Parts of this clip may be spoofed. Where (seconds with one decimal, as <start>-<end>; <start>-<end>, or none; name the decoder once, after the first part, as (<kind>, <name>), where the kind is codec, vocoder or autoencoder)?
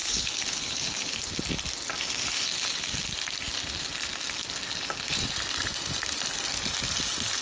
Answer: 0.0-1.2 (codec, HILCodec)